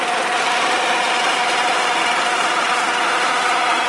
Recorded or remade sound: recorded